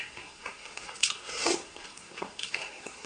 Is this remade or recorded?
remade